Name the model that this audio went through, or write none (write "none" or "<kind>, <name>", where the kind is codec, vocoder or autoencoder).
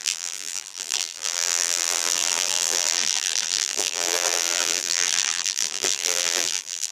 vocoder, BigVGAN v2